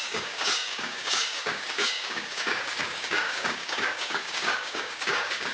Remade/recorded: remade